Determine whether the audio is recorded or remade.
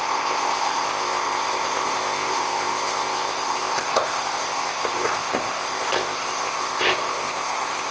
remade